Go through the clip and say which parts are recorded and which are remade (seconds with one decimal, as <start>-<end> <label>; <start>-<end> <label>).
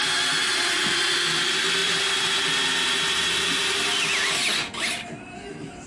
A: 0.0-5.9 recorded